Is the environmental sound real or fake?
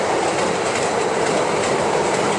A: real